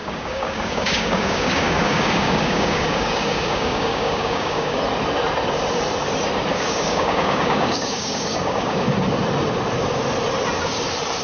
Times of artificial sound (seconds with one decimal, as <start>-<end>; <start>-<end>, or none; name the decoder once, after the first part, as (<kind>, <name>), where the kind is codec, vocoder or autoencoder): 0.0-4.8 (codec, DAC); 6.5-8.9